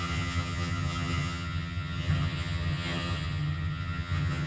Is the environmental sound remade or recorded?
remade